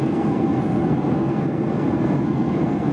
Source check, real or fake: fake